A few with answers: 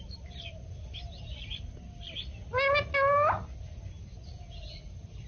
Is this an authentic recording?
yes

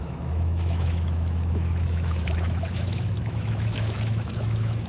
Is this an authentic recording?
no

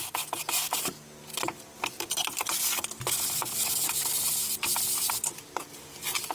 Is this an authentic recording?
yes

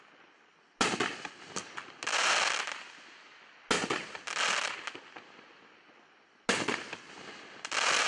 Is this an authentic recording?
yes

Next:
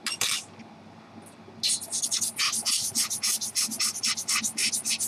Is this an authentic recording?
yes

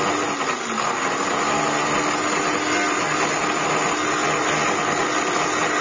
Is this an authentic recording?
yes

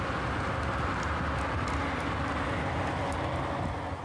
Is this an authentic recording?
yes